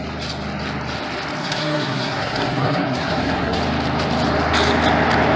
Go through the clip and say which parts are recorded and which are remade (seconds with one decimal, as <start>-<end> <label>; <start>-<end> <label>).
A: 0.0-1.4 recorded; 1.4-3.6 remade; 3.6-5.4 recorded